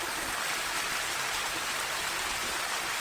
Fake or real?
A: real